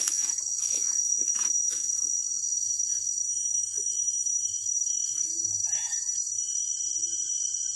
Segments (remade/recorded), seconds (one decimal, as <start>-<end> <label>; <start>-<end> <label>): 0.0-6.7 remade; 6.7-7.8 recorded